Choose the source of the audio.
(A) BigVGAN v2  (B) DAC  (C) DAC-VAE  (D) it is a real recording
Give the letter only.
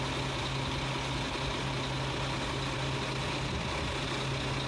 D